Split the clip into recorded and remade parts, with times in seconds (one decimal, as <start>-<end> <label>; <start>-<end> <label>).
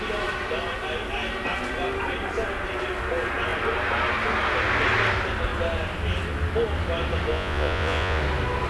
0.0-7.3 recorded; 7.3-8.2 remade; 8.2-8.7 recorded